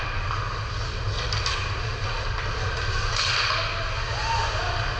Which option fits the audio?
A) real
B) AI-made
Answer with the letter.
A